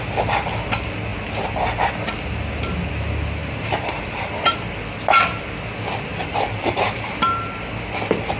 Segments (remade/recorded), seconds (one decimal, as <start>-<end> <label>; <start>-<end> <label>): 0.0-3.4 recorded; 3.4-4.3 remade; 4.3-6.1 recorded; 6.1-7.2 remade; 7.2-8.4 recorded